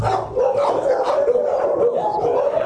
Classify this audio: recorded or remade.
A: recorded